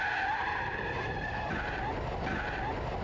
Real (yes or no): yes